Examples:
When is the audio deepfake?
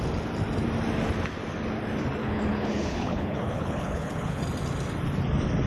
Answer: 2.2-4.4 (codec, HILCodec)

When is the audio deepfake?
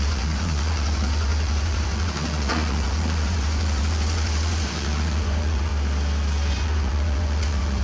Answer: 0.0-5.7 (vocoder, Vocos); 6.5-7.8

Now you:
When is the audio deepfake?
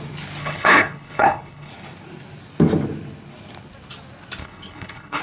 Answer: 0.4-1.7 (codec, HILCodec); 4.4-5.2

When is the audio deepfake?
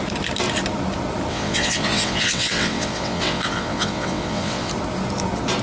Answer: 1.3-4.7 (vocoder, WaveNeXt)